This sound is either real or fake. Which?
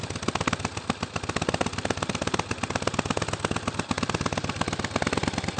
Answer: real